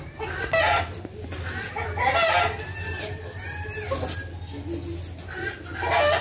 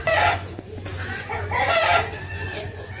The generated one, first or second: second